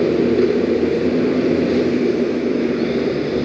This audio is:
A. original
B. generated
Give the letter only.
A